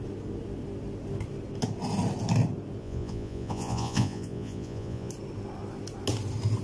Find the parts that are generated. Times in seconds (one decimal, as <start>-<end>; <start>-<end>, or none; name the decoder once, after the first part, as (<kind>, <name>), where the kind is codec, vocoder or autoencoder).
2.8-5.1 (vocoder, Vocos)